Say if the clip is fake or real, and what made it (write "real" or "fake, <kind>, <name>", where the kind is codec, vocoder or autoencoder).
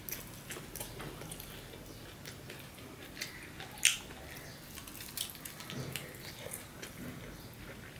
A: real